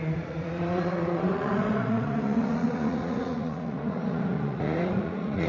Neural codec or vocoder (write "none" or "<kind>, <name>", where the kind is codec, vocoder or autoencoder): vocoder, Vocos